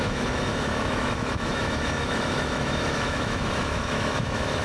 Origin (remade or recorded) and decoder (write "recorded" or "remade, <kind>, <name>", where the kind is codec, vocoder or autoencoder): remade, autoencoder, DAC-VAE